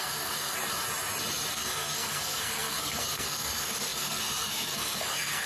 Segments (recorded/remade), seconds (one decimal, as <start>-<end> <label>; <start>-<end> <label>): 0.0-0.6 remade; 0.6-1.5 recorded; 1.5-5.5 remade